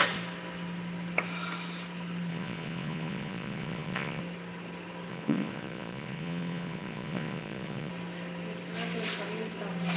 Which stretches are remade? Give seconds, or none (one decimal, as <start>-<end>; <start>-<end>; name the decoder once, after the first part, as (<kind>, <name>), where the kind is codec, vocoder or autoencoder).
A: 2.3-4.2 (vocoder, Vocos); 5.1-7.9